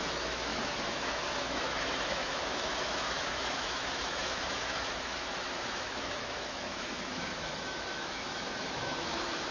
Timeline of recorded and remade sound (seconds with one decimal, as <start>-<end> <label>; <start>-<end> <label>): 0.0-9.5 remade

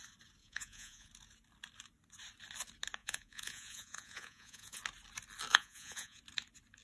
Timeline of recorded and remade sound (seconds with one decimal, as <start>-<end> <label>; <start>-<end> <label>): 0.0-0.4 recorded; 0.4-1.1 remade; 1.1-3.0 recorded; 3.0-4.8 remade; 4.8-5.5 recorded; 5.5-6.2 remade; 6.2-6.8 recorded

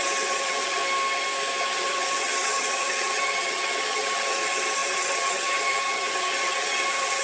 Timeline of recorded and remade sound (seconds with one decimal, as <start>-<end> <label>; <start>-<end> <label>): 0.0-0.8 remade; 0.8-1.6 recorded; 1.6-7.2 remade

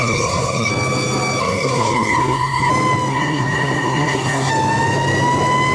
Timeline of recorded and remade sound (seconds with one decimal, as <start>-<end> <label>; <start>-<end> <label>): 0.0-0.7 remade; 0.7-1.4 recorded; 1.4-2.7 remade; 2.7-3.1 recorded; 3.1-4.5 remade; 4.5-5.7 recorded

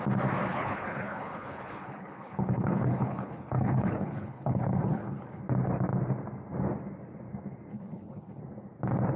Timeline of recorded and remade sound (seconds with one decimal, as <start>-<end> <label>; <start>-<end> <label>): 0.0-0.5 recorded; 0.5-5.4 remade; 5.4-7.7 recorded; 7.7-8.4 remade; 8.4-9.2 recorded

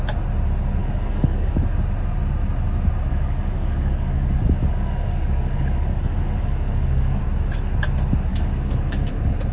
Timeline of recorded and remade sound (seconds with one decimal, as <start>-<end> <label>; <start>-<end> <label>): 0.0-0.8 recorded; 0.8-1.5 remade; 1.5-3.1 recorded; 3.1-7.2 remade; 7.2-8.3 recorded; 8.3-9.1 remade; 9.1-9.5 recorded